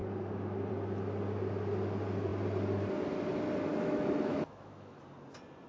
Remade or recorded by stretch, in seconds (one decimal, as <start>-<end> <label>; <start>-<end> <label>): 0.0-3.7 recorded; 3.7-5.0 remade; 5.0-5.7 recorded